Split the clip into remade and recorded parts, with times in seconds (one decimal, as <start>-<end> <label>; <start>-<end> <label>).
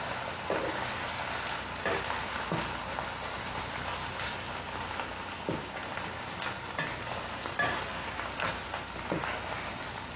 0.0-10.2 recorded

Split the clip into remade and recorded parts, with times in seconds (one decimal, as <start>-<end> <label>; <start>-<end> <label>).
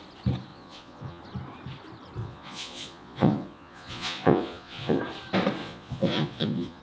0.0-0.5 recorded; 0.5-1.2 remade; 1.2-2.2 recorded; 2.2-5.0 remade; 5.0-5.6 recorded; 5.6-6.8 remade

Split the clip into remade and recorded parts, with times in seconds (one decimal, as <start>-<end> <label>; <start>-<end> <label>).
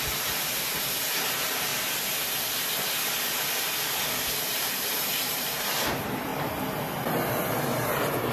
0.0-1.7 remade; 1.7-4.2 recorded; 4.2-6.3 remade; 6.3-7.3 recorded; 7.3-8.3 remade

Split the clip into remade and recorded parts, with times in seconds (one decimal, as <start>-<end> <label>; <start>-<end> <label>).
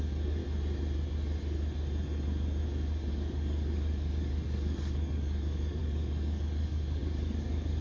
0.0-0.4 remade; 0.4-3.1 recorded; 3.1-7.8 remade